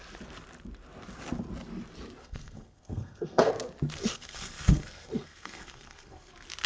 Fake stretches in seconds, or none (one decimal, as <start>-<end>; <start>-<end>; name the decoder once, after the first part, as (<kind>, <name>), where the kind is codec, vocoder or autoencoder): 2.2-3.5 (codec, SNAC); 4.0-6.3